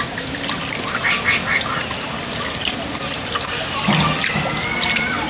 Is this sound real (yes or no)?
yes